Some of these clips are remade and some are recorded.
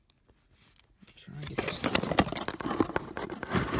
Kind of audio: recorded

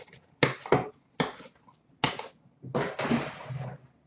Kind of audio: recorded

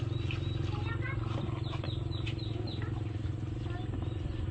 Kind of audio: recorded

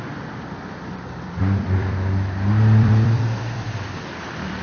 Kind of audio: remade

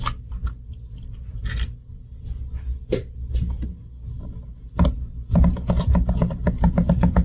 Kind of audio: recorded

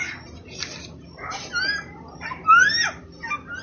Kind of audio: recorded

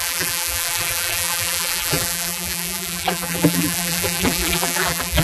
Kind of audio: remade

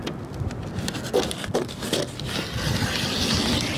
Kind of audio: recorded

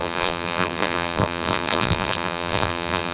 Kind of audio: remade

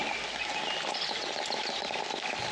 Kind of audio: recorded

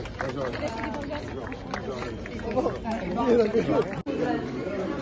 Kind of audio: recorded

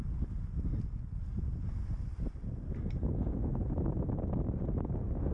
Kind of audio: recorded